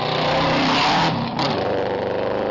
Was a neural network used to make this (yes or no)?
yes